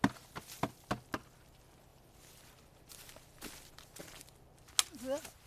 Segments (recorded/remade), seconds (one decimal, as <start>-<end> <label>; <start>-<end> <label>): 0.0-5.5 recorded